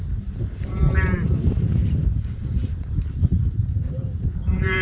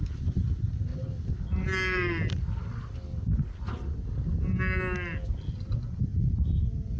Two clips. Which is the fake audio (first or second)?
first